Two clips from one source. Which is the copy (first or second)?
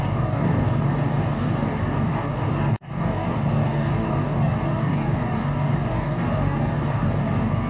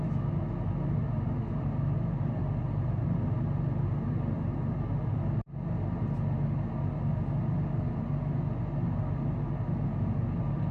first